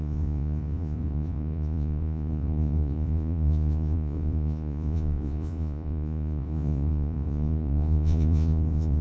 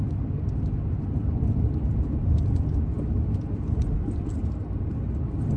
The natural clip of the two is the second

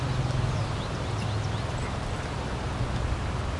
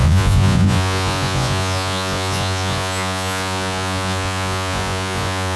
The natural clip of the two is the first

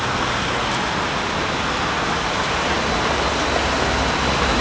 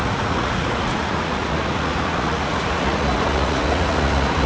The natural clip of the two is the first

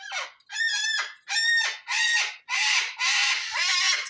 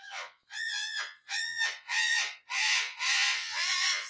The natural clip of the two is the first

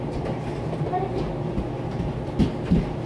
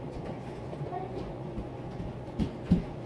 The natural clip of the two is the first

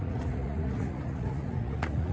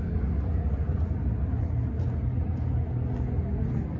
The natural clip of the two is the second